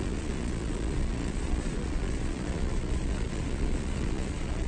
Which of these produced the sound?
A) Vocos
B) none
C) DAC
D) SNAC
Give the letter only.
A